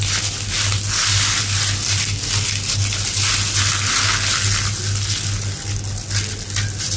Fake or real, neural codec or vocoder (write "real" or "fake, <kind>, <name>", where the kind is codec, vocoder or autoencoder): real